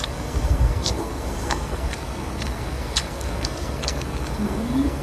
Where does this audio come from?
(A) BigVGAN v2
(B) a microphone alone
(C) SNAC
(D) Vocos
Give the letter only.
C